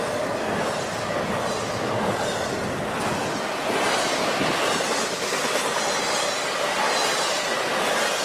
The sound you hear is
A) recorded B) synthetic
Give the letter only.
A